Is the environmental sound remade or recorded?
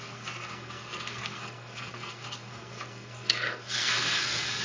remade